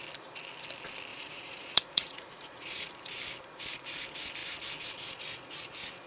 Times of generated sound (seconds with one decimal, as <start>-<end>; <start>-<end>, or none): 1.1-2.9